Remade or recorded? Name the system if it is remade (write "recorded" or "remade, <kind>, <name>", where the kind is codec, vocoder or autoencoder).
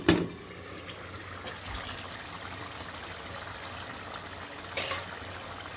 recorded